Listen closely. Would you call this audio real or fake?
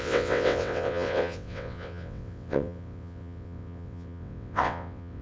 fake